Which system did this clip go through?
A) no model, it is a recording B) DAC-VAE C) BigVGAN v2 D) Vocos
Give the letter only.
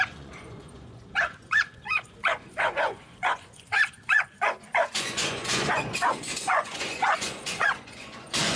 D